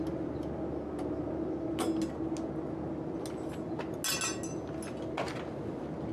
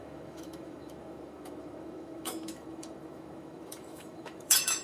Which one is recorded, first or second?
first